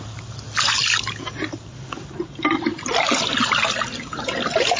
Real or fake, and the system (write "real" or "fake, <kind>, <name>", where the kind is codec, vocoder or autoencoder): real